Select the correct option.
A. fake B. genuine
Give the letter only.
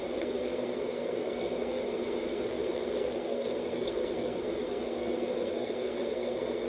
A